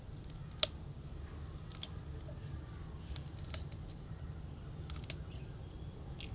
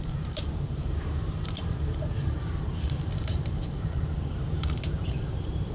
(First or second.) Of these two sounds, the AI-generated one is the second